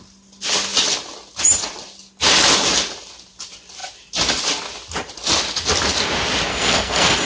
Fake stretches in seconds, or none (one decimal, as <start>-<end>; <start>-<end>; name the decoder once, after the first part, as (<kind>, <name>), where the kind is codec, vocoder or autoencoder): 6.5-7.3 (codec, SNAC)

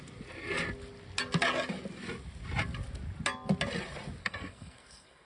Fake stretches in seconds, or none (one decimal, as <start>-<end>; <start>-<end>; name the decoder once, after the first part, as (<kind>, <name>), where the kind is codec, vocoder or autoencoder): 4.2-5.3 (codec, SNAC)

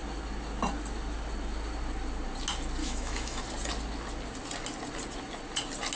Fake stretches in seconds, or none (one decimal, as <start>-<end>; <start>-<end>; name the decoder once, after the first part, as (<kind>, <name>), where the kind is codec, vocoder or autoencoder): 2.8-3.4 (autoencoder, DAC-VAE)

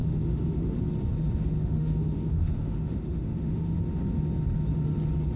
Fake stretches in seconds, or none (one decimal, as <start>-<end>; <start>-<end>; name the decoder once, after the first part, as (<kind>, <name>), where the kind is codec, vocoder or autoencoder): 0.0-0.8 (autoencoder, DAC-VAE); 1.6-3.8